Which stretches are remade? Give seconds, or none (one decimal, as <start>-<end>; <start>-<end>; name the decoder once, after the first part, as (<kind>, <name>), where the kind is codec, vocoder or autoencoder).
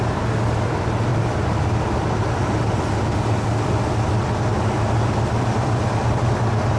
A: none